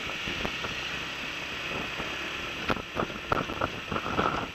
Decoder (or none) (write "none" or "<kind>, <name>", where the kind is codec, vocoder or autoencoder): none